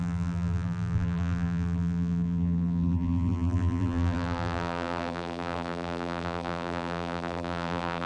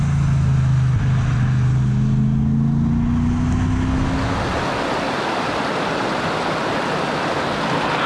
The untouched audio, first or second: second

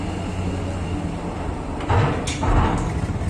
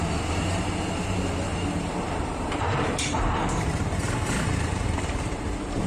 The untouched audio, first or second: first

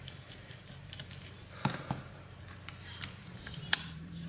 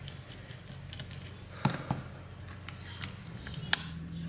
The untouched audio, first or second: second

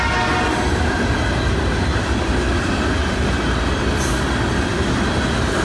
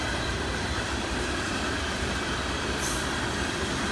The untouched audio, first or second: first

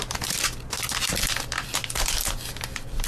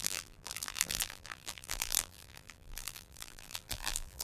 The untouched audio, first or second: first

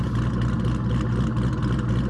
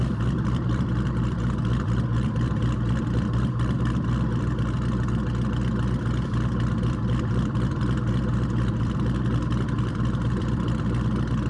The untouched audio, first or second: first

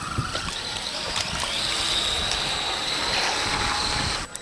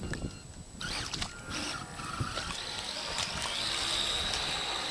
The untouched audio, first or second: second